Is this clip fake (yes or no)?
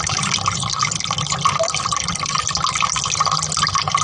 no